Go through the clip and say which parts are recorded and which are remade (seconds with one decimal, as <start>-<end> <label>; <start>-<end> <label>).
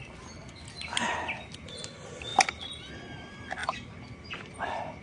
0.0-0.4 recorded; 0.4-1.4 remade; 1.4-2.3 recorded; 2.3-2.9 remade; 2.9-5.0 recorded